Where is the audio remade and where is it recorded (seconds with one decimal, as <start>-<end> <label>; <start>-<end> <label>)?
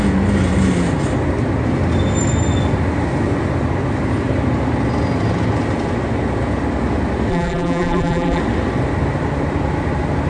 0.0-7.3 recorded; 7.3-8.4 remade; 8.4-10.3 recorded